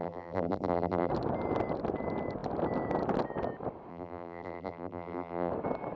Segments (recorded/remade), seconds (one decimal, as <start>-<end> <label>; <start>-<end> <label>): 0.0-1.1 remade; 1.1-3.9 recorded; 3.9-5.5 remade; 5.5-6.0 recorded